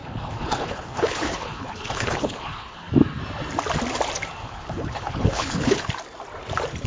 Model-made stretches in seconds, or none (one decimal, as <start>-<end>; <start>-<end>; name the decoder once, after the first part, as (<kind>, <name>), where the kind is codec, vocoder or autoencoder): 0.0-2.9 (codec, HILCodec); 4.4-5.8